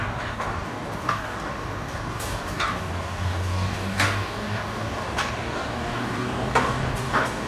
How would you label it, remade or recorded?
remade